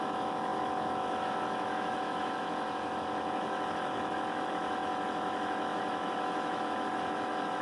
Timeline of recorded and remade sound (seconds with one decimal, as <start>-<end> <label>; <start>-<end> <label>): 0.0-7.6 remade